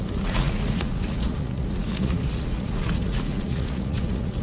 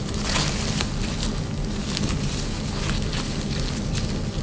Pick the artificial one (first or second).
first